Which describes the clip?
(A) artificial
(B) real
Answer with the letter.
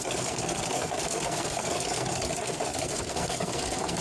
A